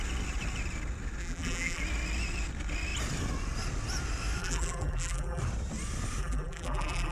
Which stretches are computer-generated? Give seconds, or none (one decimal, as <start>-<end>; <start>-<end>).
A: 1.2-1.8; 4.4-5.4; 6.2-7.1